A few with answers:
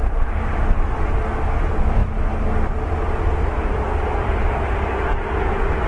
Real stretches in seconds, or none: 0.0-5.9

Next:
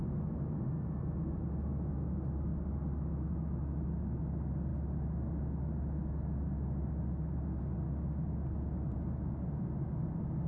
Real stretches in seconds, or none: 0.0-10.5

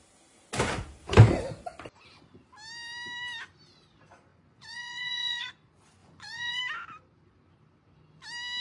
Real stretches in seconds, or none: 0.0-4.3; 5.5-6.0; 6.6-8.6

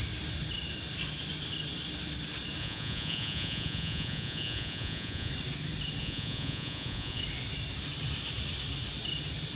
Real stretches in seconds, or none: 0.0-2.6; 5.3-6.0; 7.2-9.6

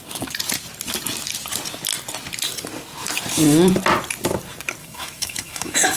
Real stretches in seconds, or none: 0.0-4.8

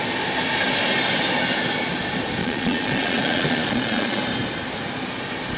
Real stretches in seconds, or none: 0.0-2.4; 4.2-5.6

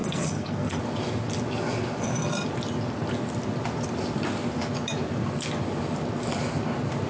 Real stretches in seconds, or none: 0.8-7.1